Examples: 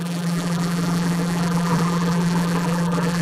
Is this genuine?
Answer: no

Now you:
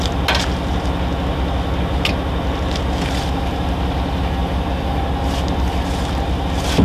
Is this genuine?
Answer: yes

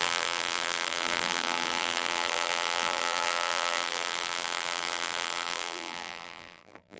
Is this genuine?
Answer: no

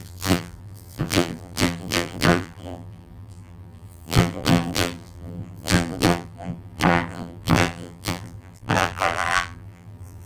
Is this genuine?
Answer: no